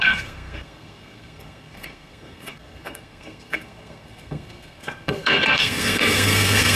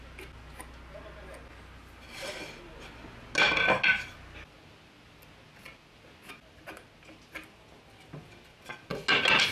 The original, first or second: second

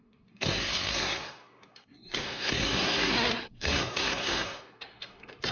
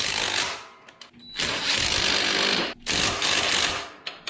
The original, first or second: second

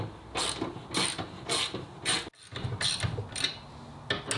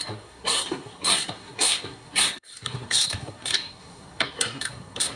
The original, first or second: first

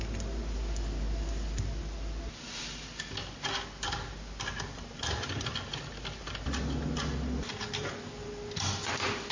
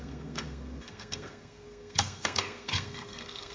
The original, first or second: first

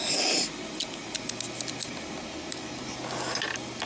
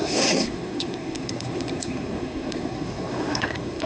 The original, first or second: first